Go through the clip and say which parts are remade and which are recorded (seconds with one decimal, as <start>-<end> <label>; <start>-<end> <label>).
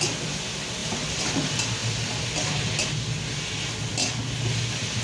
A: 0.0-0.8 recorded; 0.8-1.3 remade; 1.3-5.0 recorded